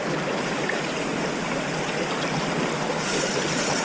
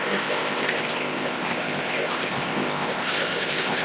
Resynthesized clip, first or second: second